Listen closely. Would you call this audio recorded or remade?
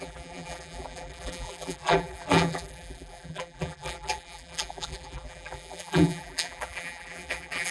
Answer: remade